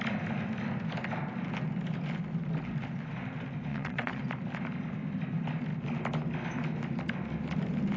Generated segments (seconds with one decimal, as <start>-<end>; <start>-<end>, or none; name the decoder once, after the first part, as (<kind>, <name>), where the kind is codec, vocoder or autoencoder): 3.7-4.2 (vocoder, WaveNeXt)